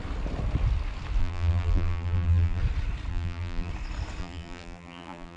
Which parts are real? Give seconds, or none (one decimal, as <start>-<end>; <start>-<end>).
0.0-1.2; 2.6-3.1; 3.7-4.2